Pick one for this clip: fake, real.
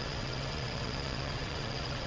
fake